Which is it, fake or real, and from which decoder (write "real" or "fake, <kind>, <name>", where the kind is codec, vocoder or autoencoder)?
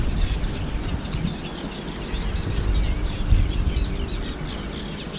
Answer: real